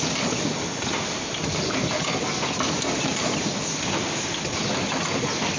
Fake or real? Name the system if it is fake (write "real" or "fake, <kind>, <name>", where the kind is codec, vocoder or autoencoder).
real